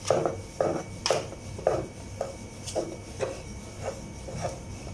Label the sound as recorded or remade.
recorded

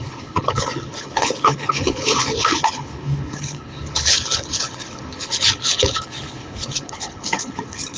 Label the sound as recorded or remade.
remade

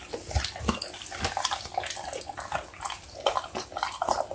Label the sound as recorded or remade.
recorded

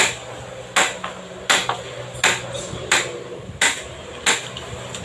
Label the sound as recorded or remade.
recorded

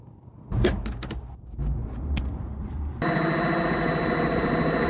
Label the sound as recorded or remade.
recorded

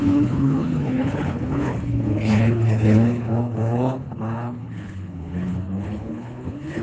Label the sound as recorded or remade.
remade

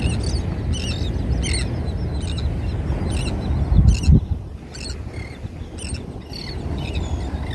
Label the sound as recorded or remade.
recorded